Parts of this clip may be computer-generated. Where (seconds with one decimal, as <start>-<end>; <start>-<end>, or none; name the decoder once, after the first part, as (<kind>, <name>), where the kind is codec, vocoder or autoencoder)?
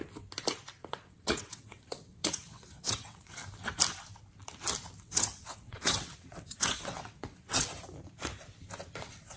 0.9-3.4 (vocoder, WaveNeXt); 5.0-7.7; 9.0-9.4